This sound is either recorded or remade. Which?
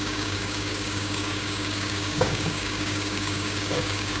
remade